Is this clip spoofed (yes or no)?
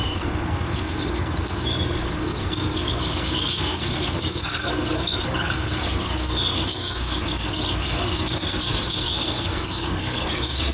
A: yes